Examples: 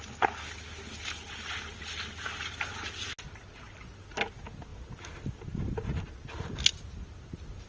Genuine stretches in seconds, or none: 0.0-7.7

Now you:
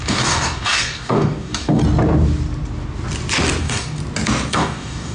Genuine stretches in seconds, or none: 1.8-3.6; 4.0-4.5

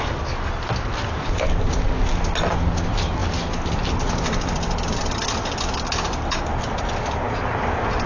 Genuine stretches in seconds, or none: 0.0-8.1

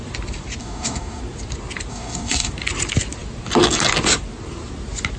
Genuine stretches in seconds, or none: 0.0-0.6; 1.2-1.9; 2.5-5.2

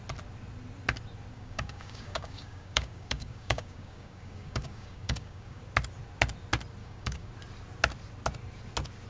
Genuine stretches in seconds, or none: 0.0-1.3; 5.6-6.8; 7.3-9.1

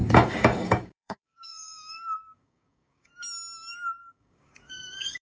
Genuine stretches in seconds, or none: 3.1-4.0